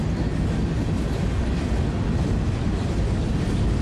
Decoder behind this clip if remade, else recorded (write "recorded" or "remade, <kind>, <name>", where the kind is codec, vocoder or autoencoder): recorded